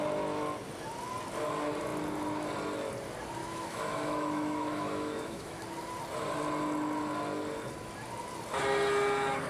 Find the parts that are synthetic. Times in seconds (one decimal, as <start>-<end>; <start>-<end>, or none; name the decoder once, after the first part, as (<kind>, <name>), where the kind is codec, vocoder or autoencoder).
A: 3.4-5.6 (autoencoder, DAC-VAE)